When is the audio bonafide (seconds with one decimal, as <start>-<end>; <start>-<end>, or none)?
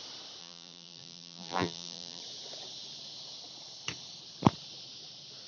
0.0-0.4; 2.2-5.5